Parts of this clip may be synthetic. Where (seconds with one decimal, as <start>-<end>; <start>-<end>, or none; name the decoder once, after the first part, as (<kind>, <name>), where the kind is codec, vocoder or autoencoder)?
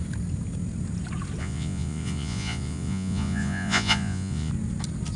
1.4-4.5 (vocoder, Vocos)